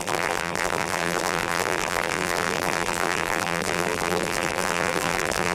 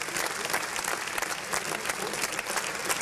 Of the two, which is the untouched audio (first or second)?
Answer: second